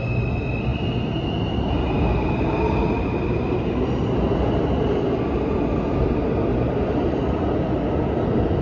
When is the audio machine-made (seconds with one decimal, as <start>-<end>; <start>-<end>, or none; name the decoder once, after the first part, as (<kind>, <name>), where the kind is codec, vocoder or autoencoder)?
none